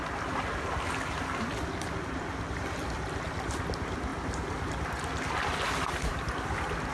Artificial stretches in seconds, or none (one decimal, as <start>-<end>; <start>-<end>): none